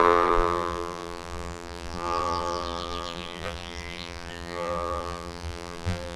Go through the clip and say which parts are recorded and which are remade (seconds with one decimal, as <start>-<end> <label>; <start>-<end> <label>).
0.0-6.2 remade